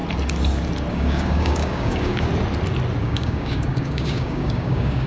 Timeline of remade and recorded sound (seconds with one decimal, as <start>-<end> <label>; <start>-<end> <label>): 0.0-0.9 recorded; 0.9-2.3 remade; 2.3-3.0 recorded; 3.0-5.1 remade